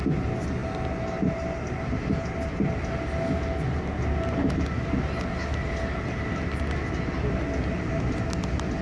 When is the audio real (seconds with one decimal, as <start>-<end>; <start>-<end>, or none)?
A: 0.0-8.8